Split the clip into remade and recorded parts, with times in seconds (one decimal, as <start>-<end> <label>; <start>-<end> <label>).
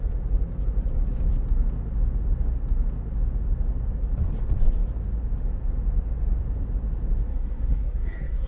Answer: 0.0-7.3 recorded; 7.3-8.5 remade